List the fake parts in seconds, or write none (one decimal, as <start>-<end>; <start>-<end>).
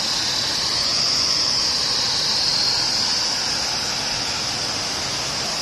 0.7-1.6